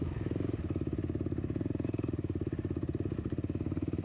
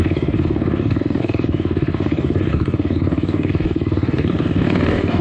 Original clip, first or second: first